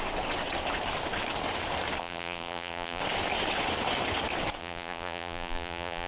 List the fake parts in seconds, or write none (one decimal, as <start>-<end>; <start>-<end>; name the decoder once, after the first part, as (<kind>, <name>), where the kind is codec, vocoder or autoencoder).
2.0-3.0 (vocoder, BigVGAN v2); 4.6-6.1

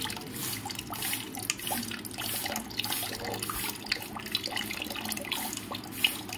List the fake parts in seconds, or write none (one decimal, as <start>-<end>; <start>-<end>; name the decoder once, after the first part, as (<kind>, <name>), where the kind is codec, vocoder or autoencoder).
none

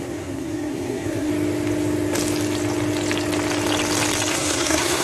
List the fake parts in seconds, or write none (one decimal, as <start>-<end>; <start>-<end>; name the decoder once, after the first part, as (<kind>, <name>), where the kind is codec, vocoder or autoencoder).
0.0-1.3 (codec, SNAC); 4.3-5.0